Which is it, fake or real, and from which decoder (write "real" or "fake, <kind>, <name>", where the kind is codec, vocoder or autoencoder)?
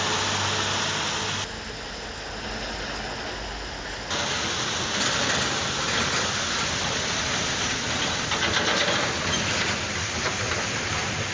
real